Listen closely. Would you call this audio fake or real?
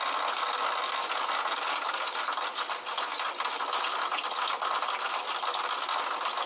real